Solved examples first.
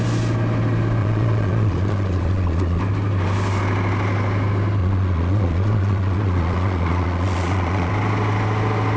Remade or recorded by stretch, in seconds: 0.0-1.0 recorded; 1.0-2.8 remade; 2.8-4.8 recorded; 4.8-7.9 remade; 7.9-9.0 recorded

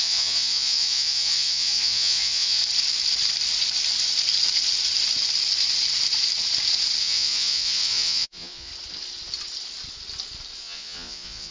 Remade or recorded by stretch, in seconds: 0.0-2.6 remade; 2.6-7.0 recorded; 7.0-8.7 remade; 8.7-10.6 recorded; 10.6-11.5 remade

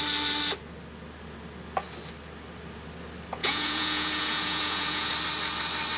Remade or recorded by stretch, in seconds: 0.0-3.4 recorded; 3.4-5.1 remade; 5.1-6.0 recorded

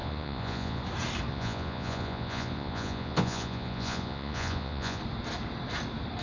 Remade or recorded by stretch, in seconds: 0.0-0.8 remade; 0.8-1.3 recorded; 1.3-5.0 remade; 5.0-6.2 recorded

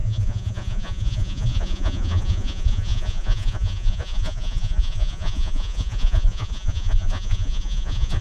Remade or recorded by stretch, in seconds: 0.0-8.2 remade

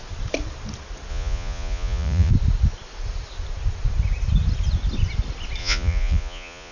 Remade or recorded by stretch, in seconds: 0.0-1.1 recorded; 1.1-2.3 remade; 2.3-5.6 recorded; 5.6-6.7 remade

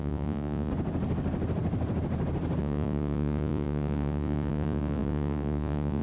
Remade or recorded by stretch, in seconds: 0.0-0.7 remade; 0.7-2.6 recorded; 2.6-6.0 remade

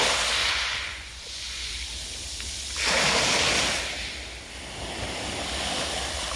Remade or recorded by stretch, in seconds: 0.0-0.4 recorded; 0.4-1.7 remade; 1.7-6.4 recorded